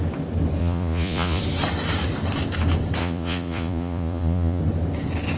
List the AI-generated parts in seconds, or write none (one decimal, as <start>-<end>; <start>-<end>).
0.6-1.4; 3.0-4.6